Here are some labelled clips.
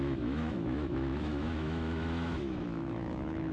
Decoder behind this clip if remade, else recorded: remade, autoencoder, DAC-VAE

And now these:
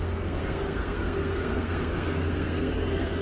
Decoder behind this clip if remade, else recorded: remade, codec, SNAC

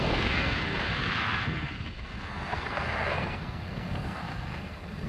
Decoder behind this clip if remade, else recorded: remade, codec, SNAC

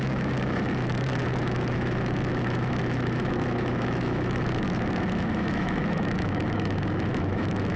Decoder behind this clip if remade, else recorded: remade, autoencoder, DAC-VAE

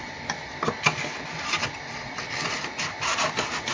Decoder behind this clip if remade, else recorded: recorded